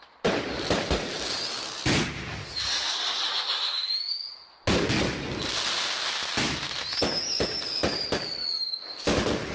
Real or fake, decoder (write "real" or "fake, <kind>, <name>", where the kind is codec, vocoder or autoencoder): real